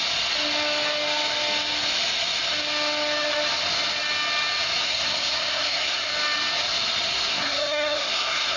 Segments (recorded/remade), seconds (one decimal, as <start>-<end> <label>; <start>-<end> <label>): 0.0-4.8 recorded; 4.8-6.1 remade; 6.1-7.3 recorded; 7.3-8.6 remade